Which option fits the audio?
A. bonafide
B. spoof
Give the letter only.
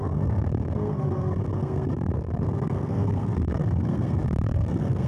B